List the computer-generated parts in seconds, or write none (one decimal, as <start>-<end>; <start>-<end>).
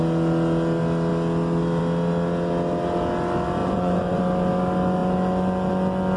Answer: 3.6-4.2